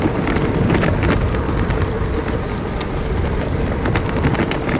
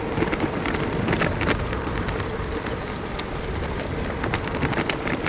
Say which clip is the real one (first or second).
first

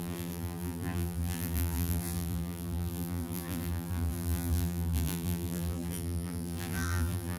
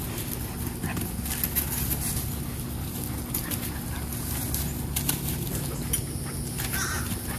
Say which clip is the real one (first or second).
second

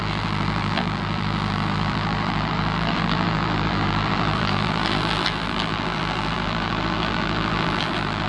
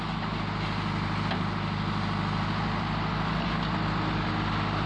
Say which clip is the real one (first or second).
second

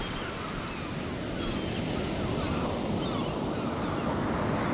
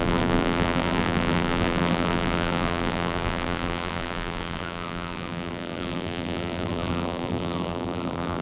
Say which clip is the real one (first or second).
first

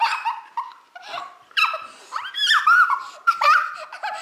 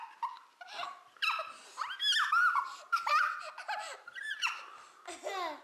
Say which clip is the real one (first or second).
second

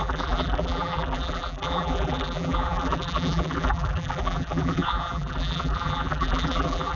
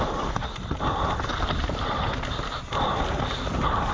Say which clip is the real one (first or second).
second